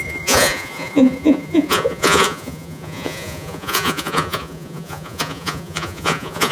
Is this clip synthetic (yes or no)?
yes